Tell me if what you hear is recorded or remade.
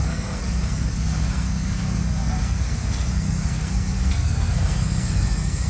remade